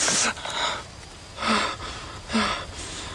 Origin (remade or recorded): recorded